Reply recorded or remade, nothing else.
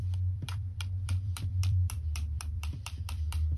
remade